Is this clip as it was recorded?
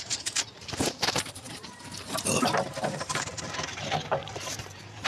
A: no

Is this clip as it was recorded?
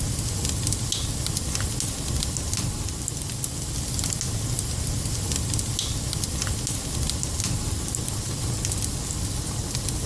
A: yes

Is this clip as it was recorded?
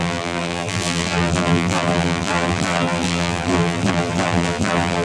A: no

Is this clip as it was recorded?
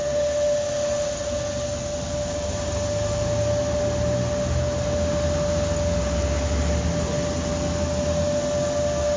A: yes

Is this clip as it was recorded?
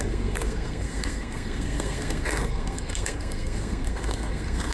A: no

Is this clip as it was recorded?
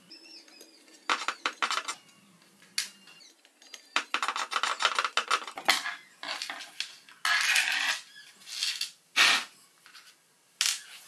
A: yes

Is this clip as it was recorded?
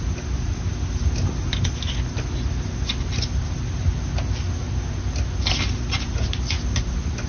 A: yes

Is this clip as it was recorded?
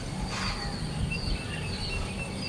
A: yes